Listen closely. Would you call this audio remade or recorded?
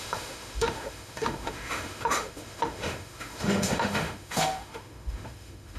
remade